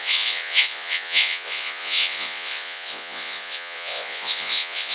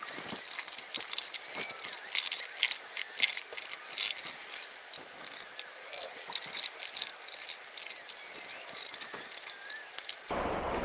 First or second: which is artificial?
first